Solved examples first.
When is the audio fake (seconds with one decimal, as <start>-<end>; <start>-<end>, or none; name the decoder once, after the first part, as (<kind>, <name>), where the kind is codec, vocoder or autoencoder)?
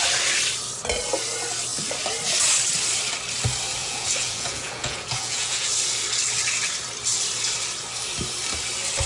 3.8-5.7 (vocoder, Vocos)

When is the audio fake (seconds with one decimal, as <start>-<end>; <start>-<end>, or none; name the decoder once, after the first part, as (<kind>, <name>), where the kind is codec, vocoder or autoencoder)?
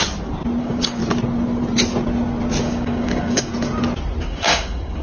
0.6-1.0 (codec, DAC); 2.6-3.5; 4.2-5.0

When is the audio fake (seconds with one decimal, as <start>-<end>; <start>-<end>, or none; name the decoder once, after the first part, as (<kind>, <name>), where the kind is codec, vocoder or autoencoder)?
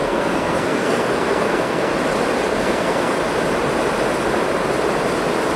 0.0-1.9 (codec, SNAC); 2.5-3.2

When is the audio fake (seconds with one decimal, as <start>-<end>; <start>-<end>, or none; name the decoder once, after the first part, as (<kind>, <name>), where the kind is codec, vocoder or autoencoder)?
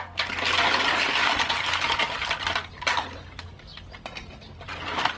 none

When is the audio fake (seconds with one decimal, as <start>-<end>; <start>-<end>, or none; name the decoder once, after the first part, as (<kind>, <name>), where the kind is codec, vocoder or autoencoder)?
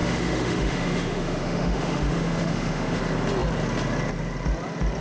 0.0-3.0 (autoencoder, DAC-VAE)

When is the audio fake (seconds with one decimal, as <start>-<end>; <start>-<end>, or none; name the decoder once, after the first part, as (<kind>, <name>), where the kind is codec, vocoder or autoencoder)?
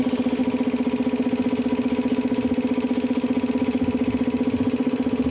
none